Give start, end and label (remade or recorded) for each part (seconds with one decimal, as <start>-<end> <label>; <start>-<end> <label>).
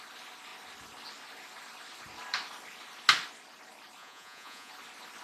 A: 0.0-4.0 recorded; 4.0-4.7 remade; 4.7-5.2 recorded